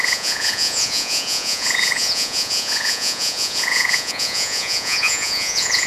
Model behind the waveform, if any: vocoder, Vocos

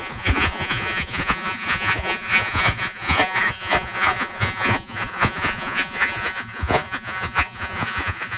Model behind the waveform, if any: vocoder, Vocos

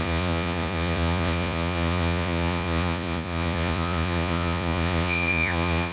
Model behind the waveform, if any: vocoder, Vocos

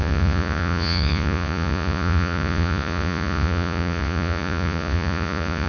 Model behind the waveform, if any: vocoder, Vocos